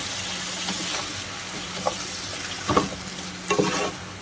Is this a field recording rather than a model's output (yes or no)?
yes